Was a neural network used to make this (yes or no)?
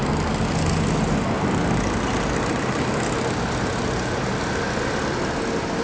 no